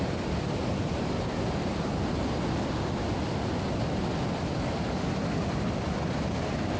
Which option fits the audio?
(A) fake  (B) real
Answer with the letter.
B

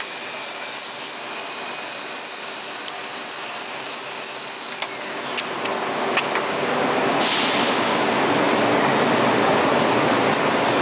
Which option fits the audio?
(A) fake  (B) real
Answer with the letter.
B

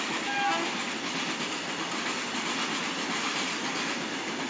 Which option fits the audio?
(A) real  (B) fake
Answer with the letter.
A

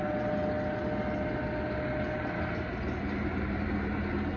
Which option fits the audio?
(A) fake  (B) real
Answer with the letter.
B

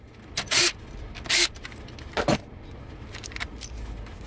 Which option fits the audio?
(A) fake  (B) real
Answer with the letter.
B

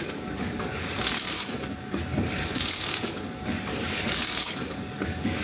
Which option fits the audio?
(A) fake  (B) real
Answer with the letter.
A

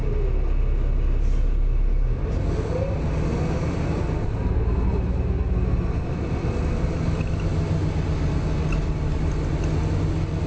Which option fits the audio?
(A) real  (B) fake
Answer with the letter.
A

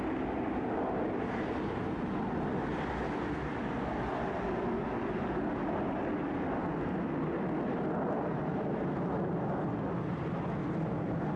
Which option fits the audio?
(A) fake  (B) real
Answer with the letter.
B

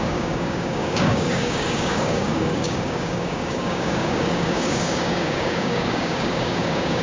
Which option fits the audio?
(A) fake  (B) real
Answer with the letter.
A